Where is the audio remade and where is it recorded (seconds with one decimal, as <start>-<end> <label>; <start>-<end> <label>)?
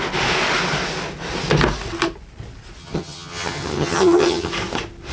0.0-2.8 recorded; 2.8-4.5 remade; 4.5-5.1 recorded